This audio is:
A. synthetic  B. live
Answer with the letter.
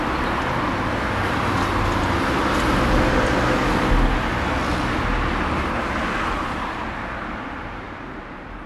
B